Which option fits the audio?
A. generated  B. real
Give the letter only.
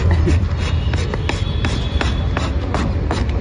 B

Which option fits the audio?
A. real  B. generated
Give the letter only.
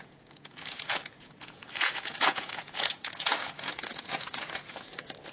B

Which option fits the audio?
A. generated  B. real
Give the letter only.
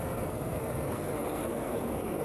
A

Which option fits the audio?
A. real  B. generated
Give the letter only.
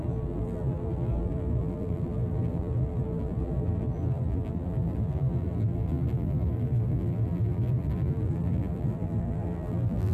B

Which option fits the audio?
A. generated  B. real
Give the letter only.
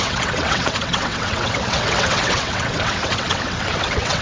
A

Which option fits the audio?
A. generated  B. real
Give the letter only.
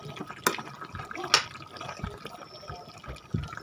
B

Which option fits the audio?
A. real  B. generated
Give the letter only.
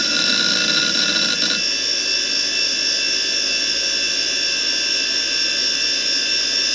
A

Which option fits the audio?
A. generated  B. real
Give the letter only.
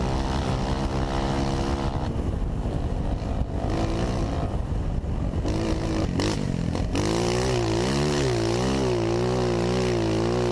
B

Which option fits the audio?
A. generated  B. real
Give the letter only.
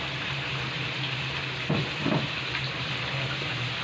A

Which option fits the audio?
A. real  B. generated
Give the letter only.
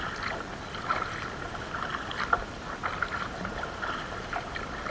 A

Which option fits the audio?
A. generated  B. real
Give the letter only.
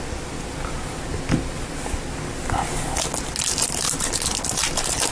B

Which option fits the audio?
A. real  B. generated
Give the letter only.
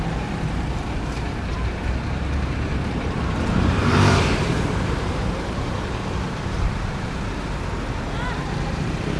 B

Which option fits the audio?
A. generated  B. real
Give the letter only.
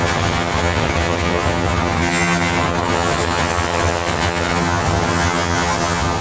A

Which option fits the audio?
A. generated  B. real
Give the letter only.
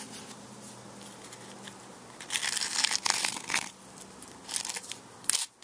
B